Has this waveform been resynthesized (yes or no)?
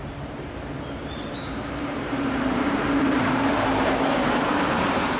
yes